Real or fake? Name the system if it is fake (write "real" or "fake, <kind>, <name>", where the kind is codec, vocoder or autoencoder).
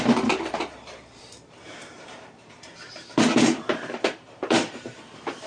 fake, vocoder, BigVGAN v2